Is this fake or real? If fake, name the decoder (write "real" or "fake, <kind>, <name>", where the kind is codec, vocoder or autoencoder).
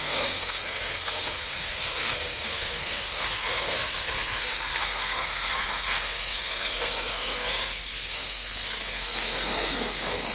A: fake, codec, SNAC